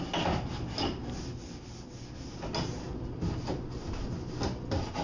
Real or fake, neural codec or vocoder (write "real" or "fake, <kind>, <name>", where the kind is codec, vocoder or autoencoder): real